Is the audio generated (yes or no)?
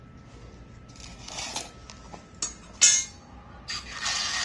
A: no